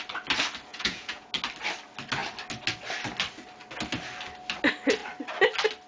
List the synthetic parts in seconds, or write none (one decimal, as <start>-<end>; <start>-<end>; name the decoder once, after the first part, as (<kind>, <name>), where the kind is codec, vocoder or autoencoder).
0.7-1.3 (vocoder, Vocos)